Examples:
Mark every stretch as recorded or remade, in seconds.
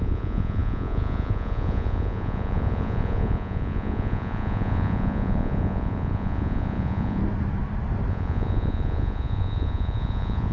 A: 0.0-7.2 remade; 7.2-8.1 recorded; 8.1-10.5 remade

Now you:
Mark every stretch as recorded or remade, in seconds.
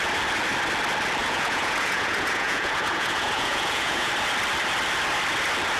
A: 0.0-1.2 recorded; 1.2-4.1 remade; 4.1-5.8 recorded